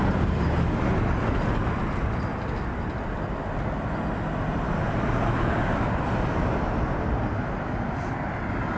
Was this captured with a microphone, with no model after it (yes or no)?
yes